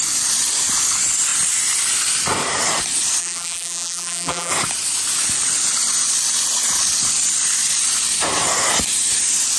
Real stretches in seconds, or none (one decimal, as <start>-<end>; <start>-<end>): 0.0-3.2; 4.5-9.6